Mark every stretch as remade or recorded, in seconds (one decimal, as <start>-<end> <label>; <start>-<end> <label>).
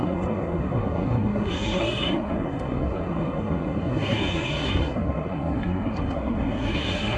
0.0-7.2 remade